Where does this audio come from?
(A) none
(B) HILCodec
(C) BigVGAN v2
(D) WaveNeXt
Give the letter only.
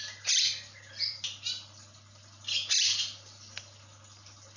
C